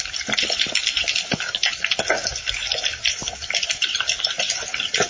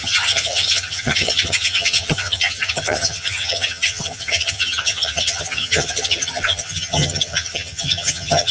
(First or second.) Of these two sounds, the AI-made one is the second